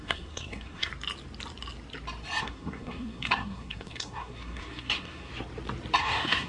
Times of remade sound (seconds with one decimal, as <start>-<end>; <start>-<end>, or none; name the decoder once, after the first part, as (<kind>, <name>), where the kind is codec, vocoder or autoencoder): 0.0-0.9 (codec, SNAC); 2.4-5.3; 6.0-6.5